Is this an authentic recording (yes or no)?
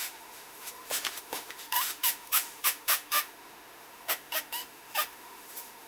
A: no